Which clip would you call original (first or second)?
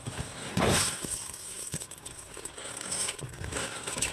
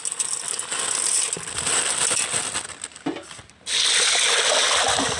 second